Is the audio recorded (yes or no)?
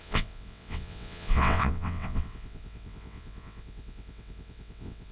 no